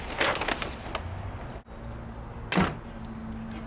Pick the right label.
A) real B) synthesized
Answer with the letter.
A